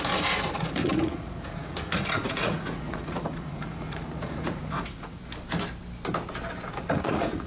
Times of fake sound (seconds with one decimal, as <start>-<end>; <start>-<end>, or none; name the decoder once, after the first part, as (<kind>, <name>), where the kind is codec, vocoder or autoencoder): 0.0-5.2 (vocoder, Vocos); 6.7-7.5